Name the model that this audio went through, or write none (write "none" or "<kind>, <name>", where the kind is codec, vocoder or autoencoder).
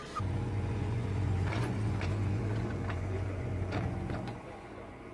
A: vocoder, Vocos